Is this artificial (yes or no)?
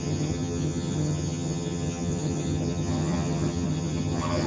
yes